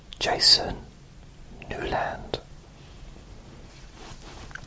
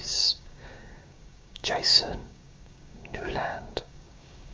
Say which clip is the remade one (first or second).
second